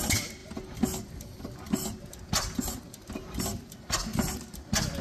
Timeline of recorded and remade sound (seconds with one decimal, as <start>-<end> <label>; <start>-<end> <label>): 0.0-5.0 recorded